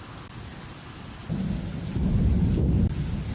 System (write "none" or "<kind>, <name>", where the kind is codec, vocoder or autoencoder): none